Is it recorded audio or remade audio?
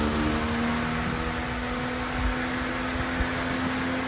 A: recorded